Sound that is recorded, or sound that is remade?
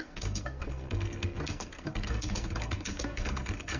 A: remade